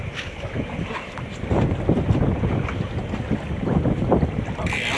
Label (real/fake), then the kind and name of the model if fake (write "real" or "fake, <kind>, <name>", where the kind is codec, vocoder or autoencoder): real